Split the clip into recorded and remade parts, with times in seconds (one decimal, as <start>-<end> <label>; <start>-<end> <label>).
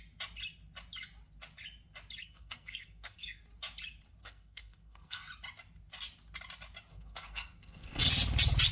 0.0-2.2 recorded; 2.2-3.4 remade; 3.4-4.2 recorded; 4.2-5.3 remade; 5.3-6.9 recorded; 6.9-8.0 remade; 8.0-8.7 recorded